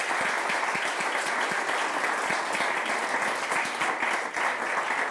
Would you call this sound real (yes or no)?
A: yes